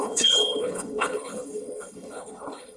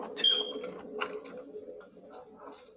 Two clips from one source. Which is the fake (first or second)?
first